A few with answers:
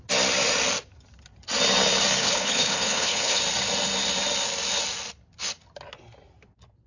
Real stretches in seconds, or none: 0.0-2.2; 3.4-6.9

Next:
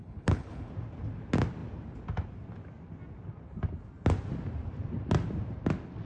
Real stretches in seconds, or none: 0.7-6.1

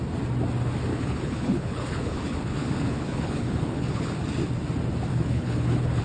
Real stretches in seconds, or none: 0.0-0.9; 4.1-5.1

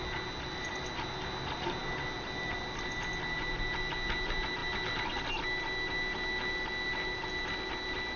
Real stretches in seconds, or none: 0.0-8.2

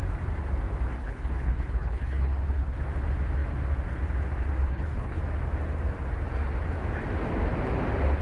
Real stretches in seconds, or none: 0.0-1.0; 2.8-4.6; 5.2-8.2

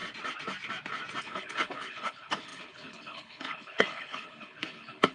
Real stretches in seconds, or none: 0.0-1.2

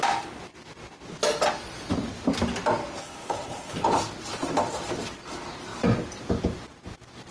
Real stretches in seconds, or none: 0.0-3.0; 3.9-7.3